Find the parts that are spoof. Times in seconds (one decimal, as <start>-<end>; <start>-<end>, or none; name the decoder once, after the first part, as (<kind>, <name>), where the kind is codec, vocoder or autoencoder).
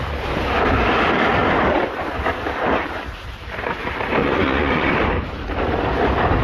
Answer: 4.2-4.9 (vocoder, Vocos)